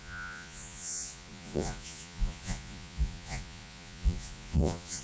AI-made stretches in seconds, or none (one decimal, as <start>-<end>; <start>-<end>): 0.0-5.0